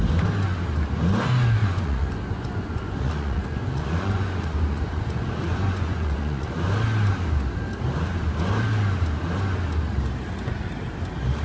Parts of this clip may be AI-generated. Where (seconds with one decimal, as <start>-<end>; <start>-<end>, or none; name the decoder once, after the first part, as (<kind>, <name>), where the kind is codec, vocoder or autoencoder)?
1.6-6.6 (vocoder, Vocos)